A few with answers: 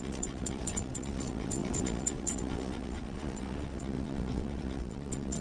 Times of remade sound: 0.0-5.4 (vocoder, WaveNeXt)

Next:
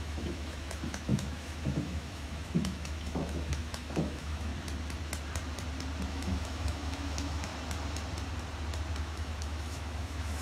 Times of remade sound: 0.0-4.5 (autoencoder, DAC-VAE); 6.1-7.5; 9.0-10.4

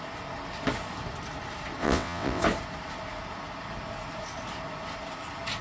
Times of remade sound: 1.8-2.4 (vocoder, WaveNeXt)